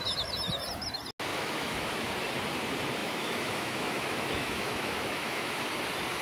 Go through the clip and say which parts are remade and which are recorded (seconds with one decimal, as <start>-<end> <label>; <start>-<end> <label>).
0.0-1.3 recorded; 1.3-2.1 remade; 2.1-3.0 recorded; 3.0-5.6 remade; 5.6-6.2 recorded